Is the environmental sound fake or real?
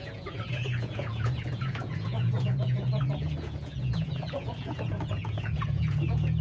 fake